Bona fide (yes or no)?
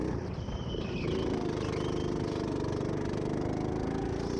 yes